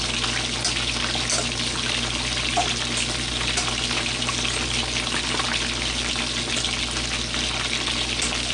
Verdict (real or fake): real